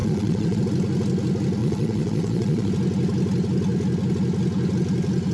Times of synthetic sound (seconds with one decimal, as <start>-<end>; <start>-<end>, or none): 0.0-0.6; 1.6-2.7